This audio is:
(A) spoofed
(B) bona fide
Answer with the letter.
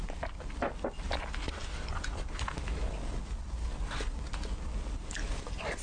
B